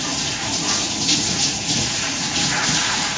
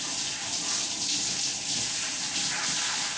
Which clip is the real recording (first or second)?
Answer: second